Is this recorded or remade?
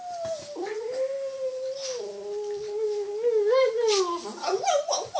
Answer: recorded